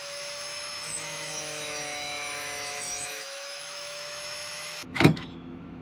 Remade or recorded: remade